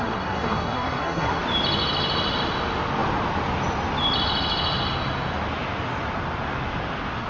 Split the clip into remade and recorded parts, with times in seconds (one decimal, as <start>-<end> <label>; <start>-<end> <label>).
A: 0.0-1.4 remade; 1.4-7.3 recorded